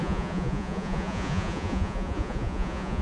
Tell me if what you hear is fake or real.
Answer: fake